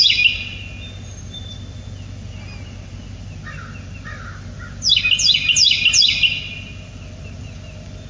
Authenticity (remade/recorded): recorded